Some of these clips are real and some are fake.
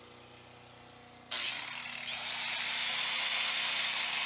real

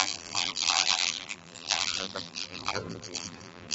fake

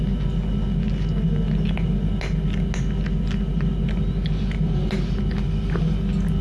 real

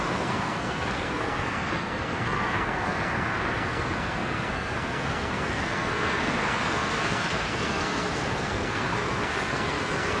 fake